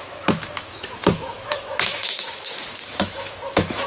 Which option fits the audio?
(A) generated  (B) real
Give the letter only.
A